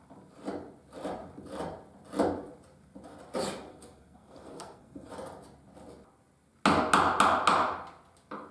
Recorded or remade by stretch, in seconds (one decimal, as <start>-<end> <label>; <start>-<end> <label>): 0.0-3.7 recorded; 3.7-5.1 remade; 5.1-8.5 recorded